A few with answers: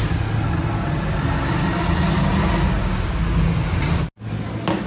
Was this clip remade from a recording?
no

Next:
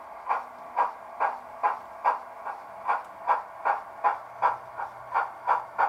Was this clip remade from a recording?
no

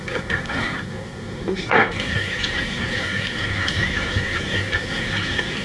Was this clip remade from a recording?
yes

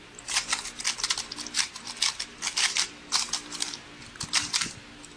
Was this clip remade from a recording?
no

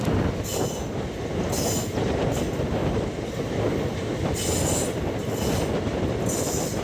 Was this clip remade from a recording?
no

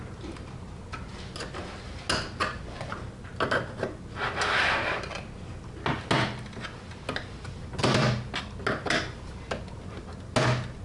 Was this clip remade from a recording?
no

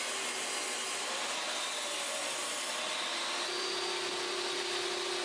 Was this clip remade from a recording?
no